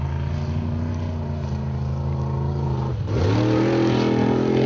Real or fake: real